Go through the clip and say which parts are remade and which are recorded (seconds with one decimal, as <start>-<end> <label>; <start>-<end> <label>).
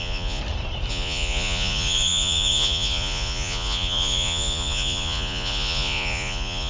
0.0-0.4 remade; 0.4-0.9 recorded; 0.9-6.7 remade